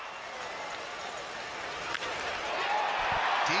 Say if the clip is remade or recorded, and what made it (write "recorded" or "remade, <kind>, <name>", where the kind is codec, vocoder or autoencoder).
recorded